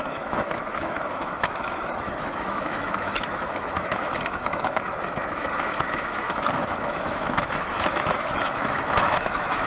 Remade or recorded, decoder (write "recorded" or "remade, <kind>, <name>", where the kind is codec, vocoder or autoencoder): remade, autoencoder, DAC-VAE